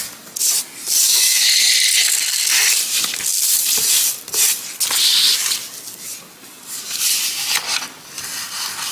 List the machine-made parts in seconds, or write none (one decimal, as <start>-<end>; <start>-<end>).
none